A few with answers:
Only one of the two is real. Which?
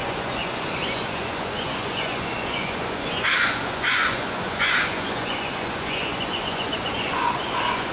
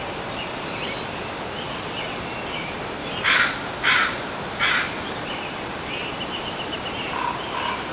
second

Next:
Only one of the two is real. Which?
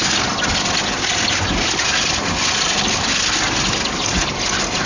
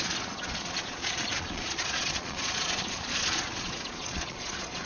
first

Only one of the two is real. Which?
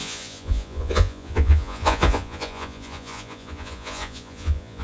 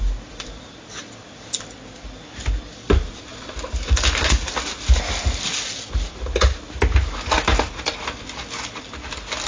second